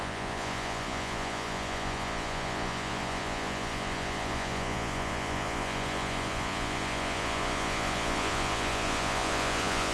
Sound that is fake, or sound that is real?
fake